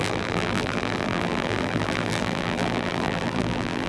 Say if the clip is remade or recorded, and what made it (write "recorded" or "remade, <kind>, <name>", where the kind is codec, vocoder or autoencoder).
remade, vocoder, BigVGAN v2